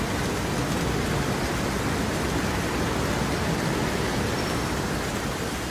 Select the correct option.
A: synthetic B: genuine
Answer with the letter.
B